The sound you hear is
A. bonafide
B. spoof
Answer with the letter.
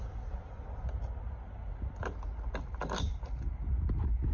A